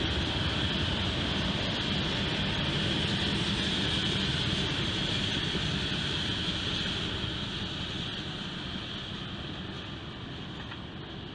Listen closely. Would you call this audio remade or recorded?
recorded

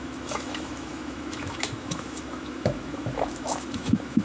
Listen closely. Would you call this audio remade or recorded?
remade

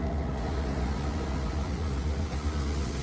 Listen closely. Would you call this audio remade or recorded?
remade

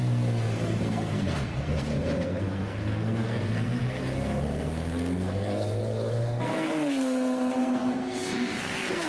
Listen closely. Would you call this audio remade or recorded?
remade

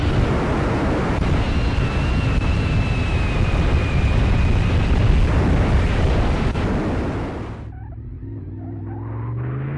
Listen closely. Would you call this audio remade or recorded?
recorded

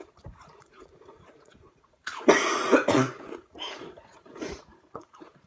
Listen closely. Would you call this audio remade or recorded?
remade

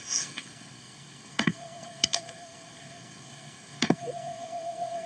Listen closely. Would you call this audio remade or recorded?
remade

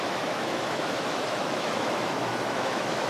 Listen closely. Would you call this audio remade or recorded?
remade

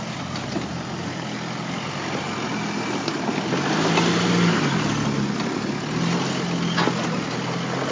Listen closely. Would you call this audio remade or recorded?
recorded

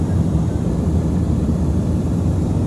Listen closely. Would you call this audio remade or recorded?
recorded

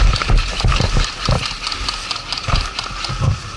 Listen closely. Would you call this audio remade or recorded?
recorded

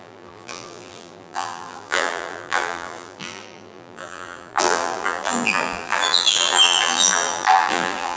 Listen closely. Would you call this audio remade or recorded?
remade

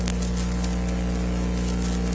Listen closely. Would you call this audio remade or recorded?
recorded